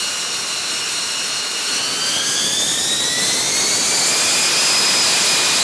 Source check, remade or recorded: recorded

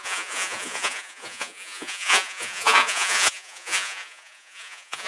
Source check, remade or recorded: remade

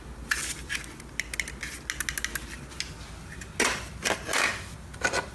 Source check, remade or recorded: recorded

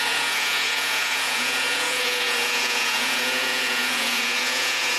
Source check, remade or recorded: remade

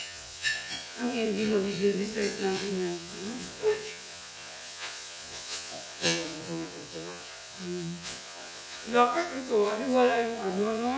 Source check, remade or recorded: remade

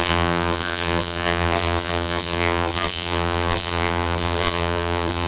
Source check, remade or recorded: remade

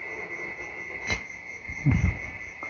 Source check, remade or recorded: recorded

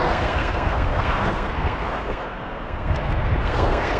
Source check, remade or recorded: remade